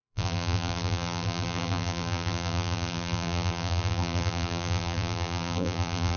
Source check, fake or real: fake